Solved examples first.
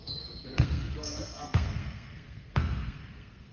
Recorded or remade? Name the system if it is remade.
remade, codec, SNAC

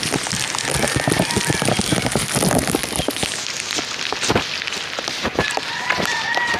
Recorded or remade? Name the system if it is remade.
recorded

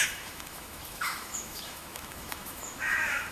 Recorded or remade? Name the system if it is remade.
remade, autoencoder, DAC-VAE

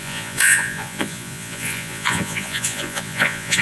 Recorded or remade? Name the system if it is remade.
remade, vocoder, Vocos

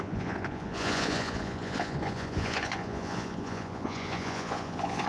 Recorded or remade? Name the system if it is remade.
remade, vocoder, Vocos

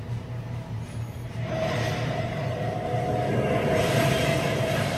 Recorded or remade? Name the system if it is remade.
remade, vocoder, BigVGAN v2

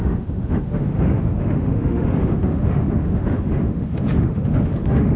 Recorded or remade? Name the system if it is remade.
remade, autoencoder, DAC-VAE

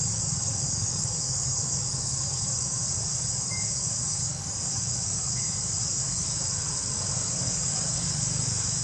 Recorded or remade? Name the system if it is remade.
remade, codec, DAC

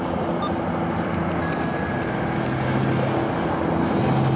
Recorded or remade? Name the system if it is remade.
recorded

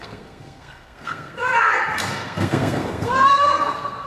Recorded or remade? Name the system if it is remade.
remade, codec, SNAC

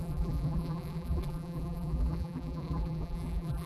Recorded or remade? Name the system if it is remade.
remade, vocoder, BigVGAN v2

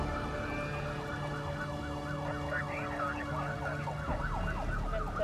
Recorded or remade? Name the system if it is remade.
recorded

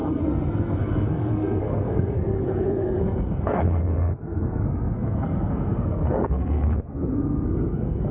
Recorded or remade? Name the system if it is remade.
remade, codec, SNAC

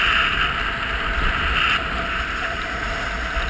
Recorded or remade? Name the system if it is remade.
recorded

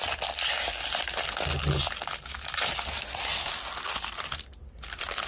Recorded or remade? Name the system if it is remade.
recorded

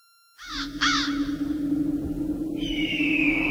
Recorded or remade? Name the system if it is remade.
recorded